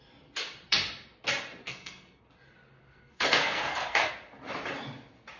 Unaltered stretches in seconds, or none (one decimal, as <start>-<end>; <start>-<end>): 0.0-1.6; 2.2-2.8; 4.1-5.4